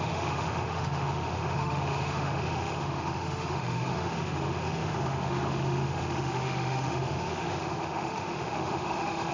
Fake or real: fake